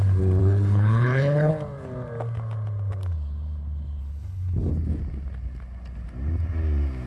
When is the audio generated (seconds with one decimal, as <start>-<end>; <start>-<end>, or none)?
0.4-1.5; 4.0-4.7